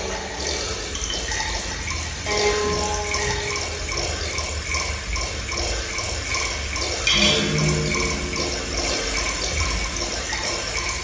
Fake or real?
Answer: real